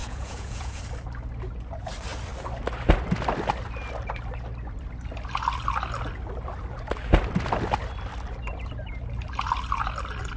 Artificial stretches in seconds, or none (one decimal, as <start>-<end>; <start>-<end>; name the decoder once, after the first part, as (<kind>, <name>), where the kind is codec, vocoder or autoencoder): 0.0-0.8 (vocoder, Vocos)